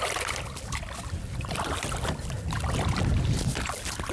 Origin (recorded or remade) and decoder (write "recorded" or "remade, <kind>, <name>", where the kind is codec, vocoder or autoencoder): recorded